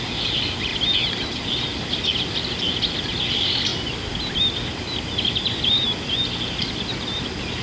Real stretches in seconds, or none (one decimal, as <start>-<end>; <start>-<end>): 0.0-7.6